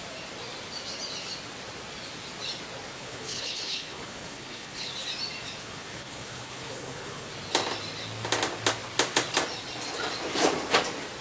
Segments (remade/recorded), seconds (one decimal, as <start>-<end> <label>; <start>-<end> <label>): 0.0-2.9 recorded; 2.9-4.9 remade; 4.9-5.6 recorded; 5.6-7.3 remade; 7.3-11.2 recorded